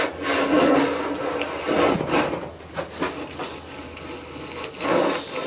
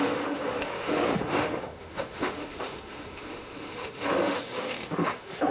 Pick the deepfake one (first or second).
second